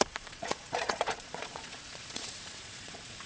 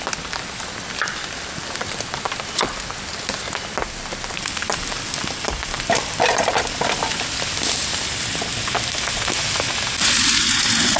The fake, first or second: first